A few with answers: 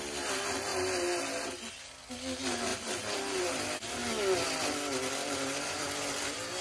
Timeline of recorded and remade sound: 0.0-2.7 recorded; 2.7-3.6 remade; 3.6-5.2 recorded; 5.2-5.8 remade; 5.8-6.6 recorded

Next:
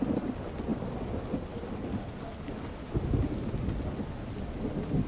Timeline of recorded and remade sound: 0.0-5.1 recorded

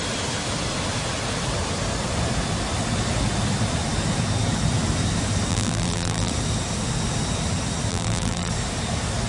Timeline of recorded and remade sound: 0.0-5.5 recorded; 5.5-6.3 remade; 6.3-7.9 recorded; 7.9-8.5 remade; 8.5-9.3 recorded

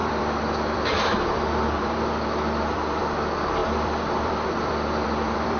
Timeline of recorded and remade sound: 0.0-3.0 remade; 3.0-3.6 recorded; 3.6-5.6 remade

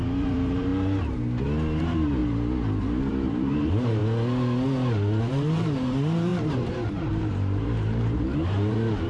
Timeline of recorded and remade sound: 0.0-0.7 remade; 0.7-1.8 recorded; 1.8-2.2 remade; 2.2-3.1 recorded; 3.1-4.0 remade; 4.0-5.2 recorded; 5.2-9.1 remade

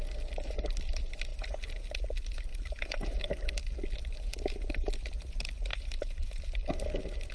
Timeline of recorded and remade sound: 0.0-1.3 recorded; 1.3-1.8 remade; 1.8-2.5 recorded; 2.5-3.3 remade; 3.3-5.7 recorded; 5.7-6.4 remade; 6.4-7.3 recorded

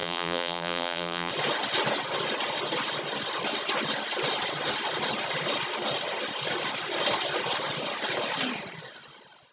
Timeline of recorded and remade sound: 0.0-1.3 remade; 1.3-9.5 recorded